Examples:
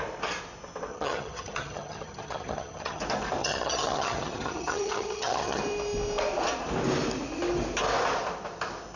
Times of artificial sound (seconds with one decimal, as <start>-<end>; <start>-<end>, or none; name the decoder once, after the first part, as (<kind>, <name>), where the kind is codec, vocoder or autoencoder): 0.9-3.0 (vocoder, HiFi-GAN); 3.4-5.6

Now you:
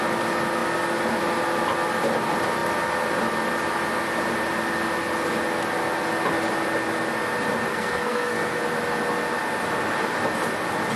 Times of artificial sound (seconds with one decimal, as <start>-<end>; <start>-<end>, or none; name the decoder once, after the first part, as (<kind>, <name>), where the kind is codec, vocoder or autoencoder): 7.7-8.6 (codec, SNAC)

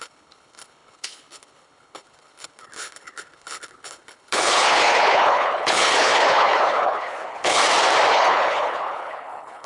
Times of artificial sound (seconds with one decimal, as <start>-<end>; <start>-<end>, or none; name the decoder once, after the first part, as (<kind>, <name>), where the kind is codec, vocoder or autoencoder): 0.0-7.6 (codec, HILCodec); 8.1-9.7

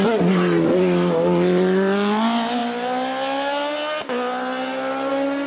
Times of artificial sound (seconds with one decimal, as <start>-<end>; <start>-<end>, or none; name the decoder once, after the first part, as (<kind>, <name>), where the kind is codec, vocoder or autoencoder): none